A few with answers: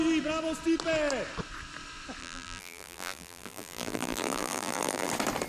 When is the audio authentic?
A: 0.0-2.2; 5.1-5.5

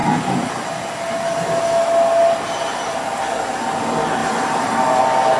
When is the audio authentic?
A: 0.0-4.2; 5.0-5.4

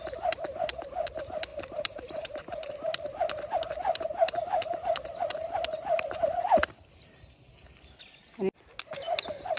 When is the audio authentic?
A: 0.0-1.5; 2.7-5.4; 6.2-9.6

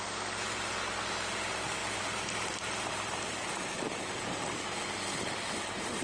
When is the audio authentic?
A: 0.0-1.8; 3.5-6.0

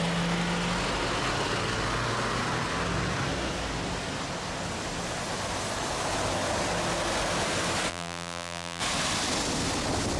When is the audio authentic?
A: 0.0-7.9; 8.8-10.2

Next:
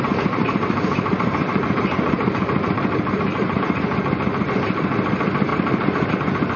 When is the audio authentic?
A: 0.0-0.4; 3.6-5.5; 6.1-6.6